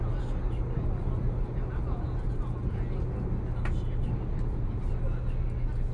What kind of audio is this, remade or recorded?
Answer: recorded